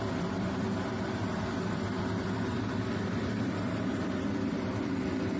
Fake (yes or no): yes